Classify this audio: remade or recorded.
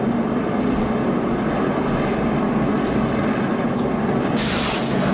recorded